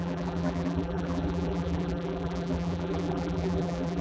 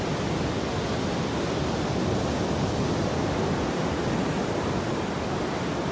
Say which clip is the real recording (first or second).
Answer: second